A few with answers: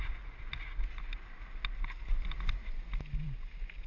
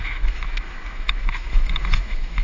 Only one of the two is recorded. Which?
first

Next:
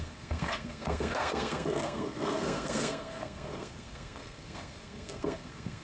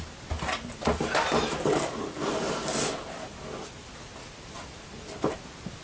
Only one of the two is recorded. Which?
second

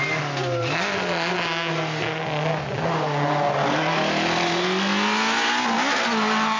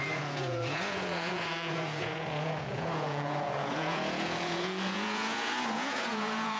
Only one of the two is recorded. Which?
first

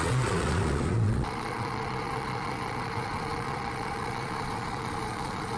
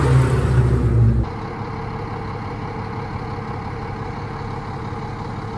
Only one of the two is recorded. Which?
second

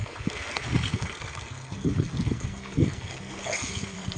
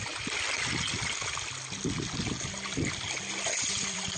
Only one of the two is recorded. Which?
second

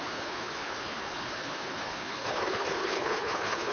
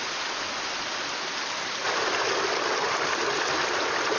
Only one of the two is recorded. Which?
second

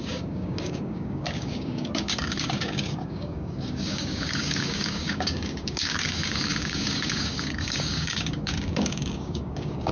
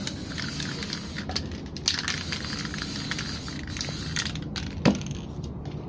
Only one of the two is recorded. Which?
second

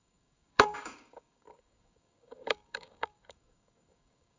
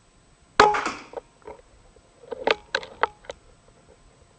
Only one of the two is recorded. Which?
second